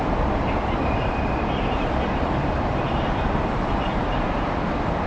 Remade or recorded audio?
remade